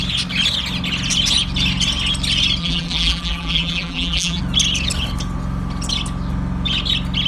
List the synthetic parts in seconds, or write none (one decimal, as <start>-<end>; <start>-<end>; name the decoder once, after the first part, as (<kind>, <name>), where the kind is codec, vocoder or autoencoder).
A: 2.6-4.4 (vocoder, BigVGAN v2)